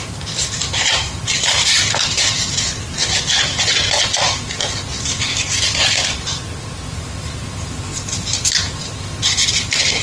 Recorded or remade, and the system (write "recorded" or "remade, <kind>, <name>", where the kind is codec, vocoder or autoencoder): remade, vocoder, BigVGAN v2